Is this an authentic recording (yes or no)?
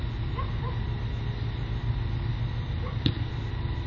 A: yes